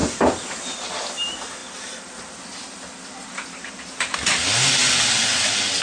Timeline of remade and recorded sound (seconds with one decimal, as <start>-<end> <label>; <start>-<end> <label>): 0.0-1.0 remade; 1.0-1.6 recorded; 1.6-3.7 remade; 3.7-5.8 recorded